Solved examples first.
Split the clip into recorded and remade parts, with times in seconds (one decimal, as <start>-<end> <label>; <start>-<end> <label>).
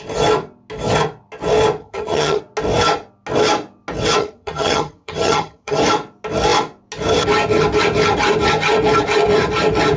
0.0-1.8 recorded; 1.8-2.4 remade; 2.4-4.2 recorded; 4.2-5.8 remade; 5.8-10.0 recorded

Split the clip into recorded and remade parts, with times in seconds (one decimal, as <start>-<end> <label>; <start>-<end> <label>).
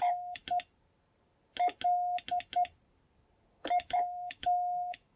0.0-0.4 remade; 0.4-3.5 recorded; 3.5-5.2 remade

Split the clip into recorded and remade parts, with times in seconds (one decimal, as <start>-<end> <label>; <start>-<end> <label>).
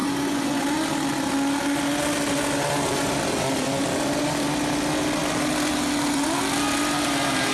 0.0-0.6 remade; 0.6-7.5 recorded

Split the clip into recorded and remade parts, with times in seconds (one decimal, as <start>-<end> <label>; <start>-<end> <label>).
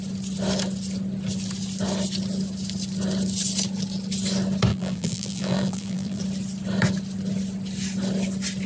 0.0-4.7 recorded; 4.7-6.2 remade; 6.2-8.7 recorded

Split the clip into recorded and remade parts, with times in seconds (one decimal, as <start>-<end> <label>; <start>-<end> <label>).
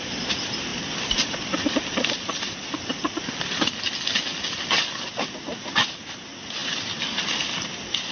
0.0-4.3 recorded; 4.3-4.9 remade; 4.9-8.1 recorded